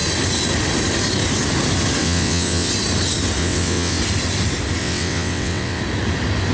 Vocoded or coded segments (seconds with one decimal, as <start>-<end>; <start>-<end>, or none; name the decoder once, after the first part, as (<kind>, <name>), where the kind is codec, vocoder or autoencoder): 2.0-2.7 (vocoder, WaveNeXt); 3.4-4.0; 4.8-5.8